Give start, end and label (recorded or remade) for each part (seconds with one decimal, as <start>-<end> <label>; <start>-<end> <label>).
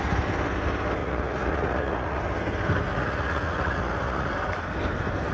0.0-1.0 recorded; 1.0-2.2 remade; 2.2-2.9 recorded; 2.9-4.3 remade; 4.3-5.3 recorded